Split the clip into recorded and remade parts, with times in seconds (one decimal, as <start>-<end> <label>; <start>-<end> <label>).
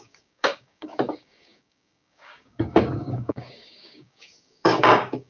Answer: 0.0-5.3 remade